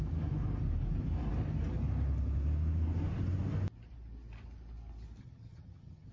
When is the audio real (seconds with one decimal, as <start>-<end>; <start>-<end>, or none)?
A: 0.0-5.2